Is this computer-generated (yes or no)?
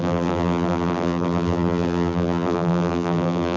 yes